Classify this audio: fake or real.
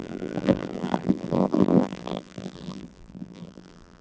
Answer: fake